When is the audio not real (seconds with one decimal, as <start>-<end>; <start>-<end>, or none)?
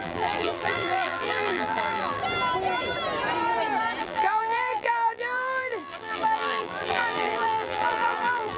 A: 0.0-2.2; 4.0-8.6